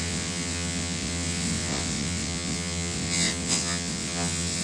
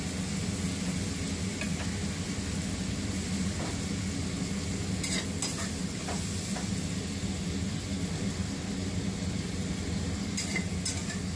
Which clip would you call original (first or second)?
second